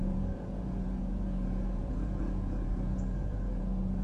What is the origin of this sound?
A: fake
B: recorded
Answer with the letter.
A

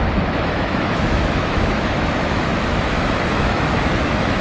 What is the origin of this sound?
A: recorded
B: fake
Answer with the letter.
B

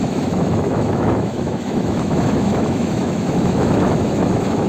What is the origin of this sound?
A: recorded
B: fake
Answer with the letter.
B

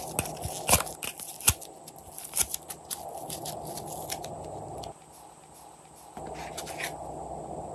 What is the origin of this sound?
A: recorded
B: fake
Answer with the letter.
A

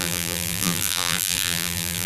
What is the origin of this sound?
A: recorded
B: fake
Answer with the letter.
B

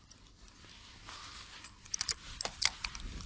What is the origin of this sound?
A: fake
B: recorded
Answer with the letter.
B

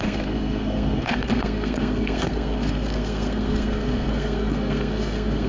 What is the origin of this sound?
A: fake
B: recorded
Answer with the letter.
A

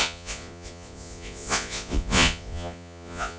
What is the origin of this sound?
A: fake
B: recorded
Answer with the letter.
A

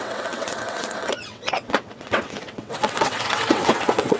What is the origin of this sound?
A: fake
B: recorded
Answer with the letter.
A